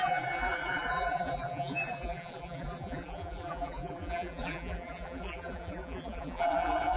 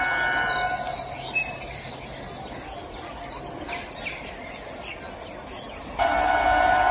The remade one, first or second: first